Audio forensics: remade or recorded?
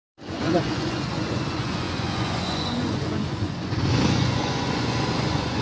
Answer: remade